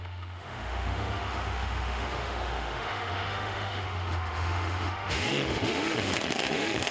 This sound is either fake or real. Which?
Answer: fake